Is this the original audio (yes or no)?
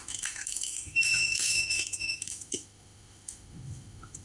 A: no